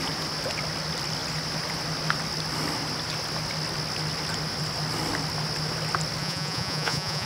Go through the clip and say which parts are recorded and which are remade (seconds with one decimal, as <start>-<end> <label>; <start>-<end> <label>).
0.0-6.2 recorded; 6.2-7.3 remade